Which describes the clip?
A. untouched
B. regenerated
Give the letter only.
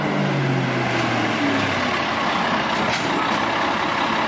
A